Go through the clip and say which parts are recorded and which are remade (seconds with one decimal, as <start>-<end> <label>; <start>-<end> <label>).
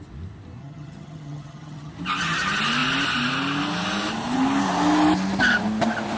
0.0-0.6 recorded; 0.6-1.9 remade; 1.9-6.2 recorded